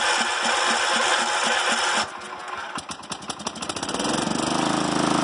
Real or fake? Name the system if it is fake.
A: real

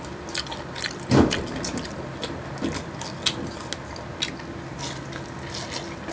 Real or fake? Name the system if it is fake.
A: real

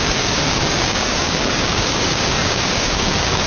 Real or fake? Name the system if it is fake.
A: fake, codec, DAC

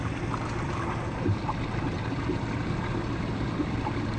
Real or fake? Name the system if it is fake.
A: real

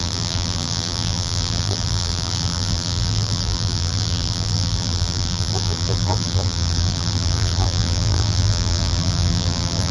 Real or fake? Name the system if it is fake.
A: fake, vocoder, BigVGAN v2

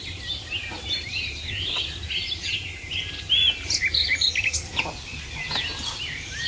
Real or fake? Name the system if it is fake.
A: real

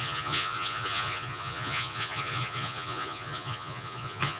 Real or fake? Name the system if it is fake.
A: fake, vocoder, Vocos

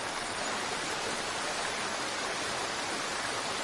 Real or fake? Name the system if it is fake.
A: real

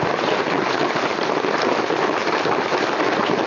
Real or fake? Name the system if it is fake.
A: real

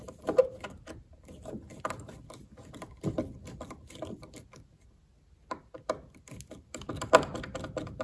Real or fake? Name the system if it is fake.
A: real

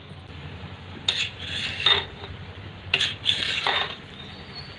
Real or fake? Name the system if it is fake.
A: real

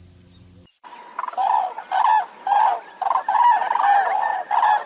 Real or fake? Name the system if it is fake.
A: real